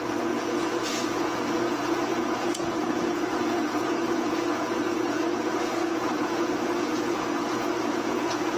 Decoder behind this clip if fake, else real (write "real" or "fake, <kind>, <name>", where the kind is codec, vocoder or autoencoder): fake, vocoder, Vocos